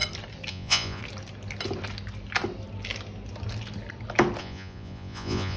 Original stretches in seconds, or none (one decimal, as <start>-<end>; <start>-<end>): 0.0-0.5; 1.0-4.4